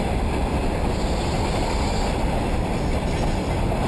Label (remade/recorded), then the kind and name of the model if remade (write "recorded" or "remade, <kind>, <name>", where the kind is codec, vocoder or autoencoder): recorded